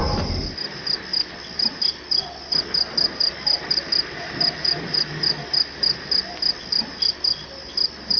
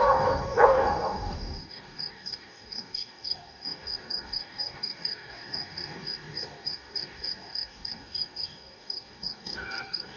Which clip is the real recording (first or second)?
first